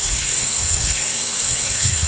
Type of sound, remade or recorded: remade